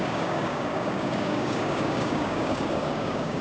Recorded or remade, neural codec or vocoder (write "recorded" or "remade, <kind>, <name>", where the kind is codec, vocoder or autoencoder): remade, codec, DAC